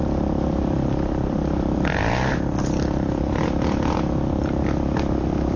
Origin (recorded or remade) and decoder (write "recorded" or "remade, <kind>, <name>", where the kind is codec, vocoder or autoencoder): remade, vocoder, BigVGAN v2